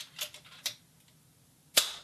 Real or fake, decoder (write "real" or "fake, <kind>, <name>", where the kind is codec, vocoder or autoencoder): real